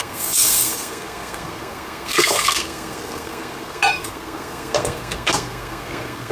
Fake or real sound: fake